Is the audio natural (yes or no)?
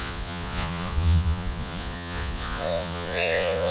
no